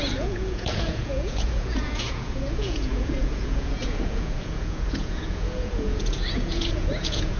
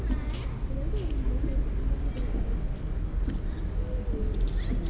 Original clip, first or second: second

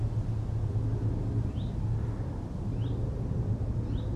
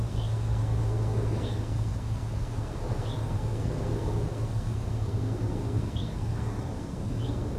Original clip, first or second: first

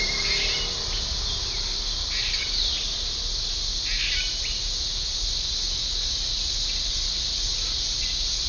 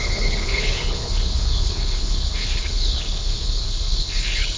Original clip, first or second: first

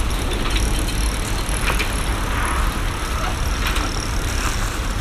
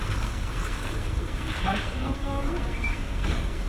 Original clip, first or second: first